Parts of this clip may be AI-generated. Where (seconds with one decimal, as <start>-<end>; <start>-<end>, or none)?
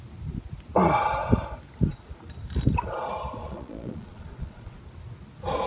3.4-4.8